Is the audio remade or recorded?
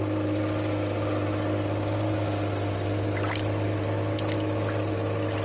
recorded